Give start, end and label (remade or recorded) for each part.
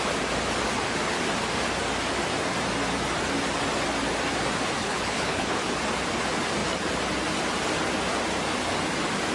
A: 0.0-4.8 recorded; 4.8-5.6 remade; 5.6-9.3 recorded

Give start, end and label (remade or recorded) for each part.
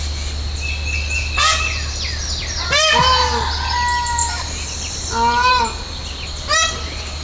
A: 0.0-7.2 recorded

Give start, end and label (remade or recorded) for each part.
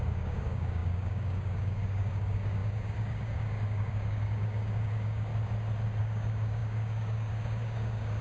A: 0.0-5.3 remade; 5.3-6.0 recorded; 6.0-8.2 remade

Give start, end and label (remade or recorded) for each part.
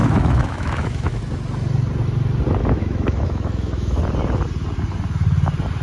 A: 0.0-1.2 remade; 1.2-2.6 recorded; 2.6-4.0 remade; 4.0-5.8 recorded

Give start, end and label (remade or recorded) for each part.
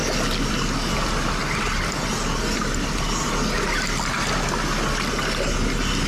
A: 0.0-6.1 recorded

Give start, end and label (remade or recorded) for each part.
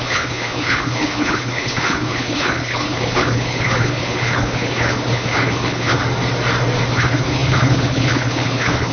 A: 0.0-6.0 remade; 6.0-6.9 recorded; 6.9-8.9 remade